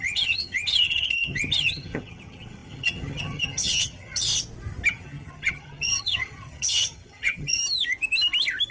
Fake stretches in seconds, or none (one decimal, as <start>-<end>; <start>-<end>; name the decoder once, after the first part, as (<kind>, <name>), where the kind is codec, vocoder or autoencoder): 0.0-4.2 (vocoder, HiFi-GAN); 4.9-7.6